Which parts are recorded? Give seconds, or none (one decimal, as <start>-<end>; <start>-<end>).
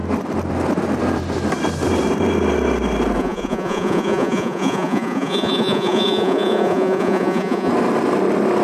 0.0-3.2; 7.7-8.6